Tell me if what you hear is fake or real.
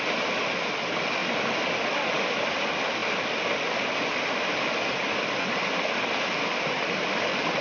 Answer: real